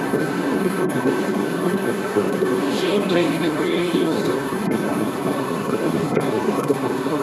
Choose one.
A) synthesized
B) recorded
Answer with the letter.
A